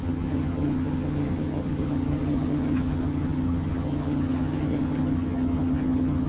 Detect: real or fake fake